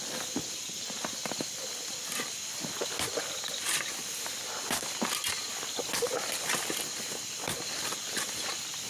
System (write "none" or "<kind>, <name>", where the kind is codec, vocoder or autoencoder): none